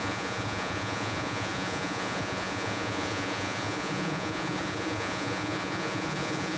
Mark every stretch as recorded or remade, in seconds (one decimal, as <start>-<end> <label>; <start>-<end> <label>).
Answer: 0.0-6.6 remade